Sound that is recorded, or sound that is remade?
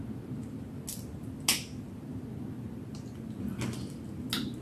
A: recorded